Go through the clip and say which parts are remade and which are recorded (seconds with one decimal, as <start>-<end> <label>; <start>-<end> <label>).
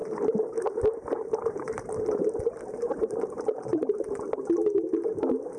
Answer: 0.0-3.3 remade; 3.3-5.6 recorded